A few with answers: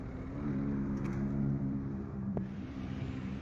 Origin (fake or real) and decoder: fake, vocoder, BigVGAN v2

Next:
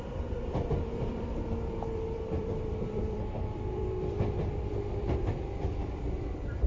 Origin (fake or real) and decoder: fake, vocoder, BigVGAN v2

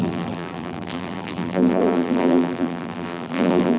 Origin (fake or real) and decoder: fake, vocoder, BigVGAN v2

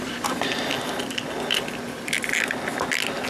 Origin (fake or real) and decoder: real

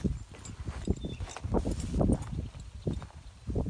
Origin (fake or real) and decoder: fake, vocoder, BigVGAN v2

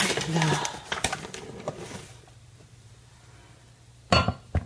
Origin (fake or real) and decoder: real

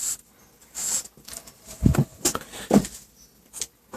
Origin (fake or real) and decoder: real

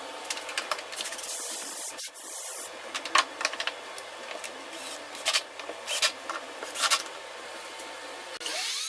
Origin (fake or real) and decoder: real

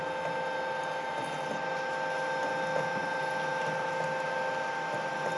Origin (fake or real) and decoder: real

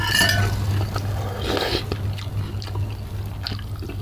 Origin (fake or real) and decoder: real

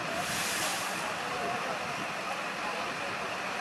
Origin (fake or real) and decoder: fake, vocoder, BigVGAN v2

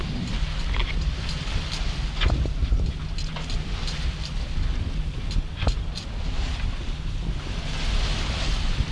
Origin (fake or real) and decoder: real